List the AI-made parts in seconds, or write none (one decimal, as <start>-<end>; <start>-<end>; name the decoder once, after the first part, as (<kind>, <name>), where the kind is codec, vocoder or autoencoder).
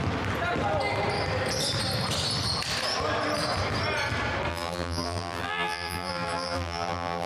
4.5-7.3 (vocoder, BigVGAN v2)